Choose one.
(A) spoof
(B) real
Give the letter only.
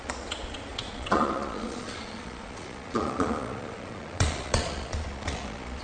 A